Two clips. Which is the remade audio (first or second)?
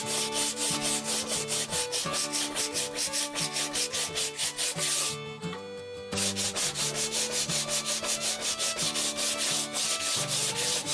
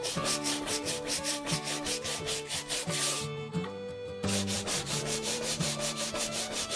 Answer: second